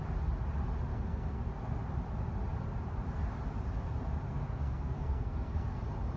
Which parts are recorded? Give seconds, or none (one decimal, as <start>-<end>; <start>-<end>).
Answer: 0.0-0.9; 1.4-4.3; 5.8-6.2